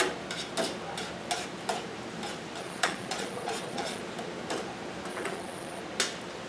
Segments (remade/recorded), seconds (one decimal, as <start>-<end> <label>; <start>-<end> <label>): 0.0-2.6 recorded; 2.6-4.0 remade; 4.0-5.1 recorded; 5.1-5.8 remade; 5.8-6.5 recorded